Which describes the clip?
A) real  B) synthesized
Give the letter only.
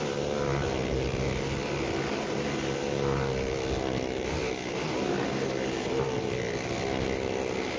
A